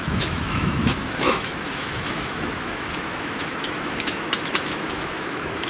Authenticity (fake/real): fake